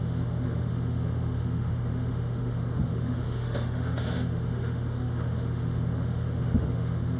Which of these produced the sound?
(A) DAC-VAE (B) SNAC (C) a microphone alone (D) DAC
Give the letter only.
A